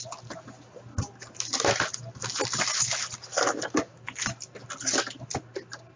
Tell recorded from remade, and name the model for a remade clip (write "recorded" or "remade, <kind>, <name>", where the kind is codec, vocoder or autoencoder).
recorded